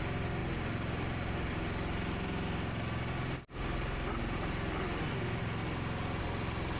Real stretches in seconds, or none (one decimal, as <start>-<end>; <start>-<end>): 0.0-6.8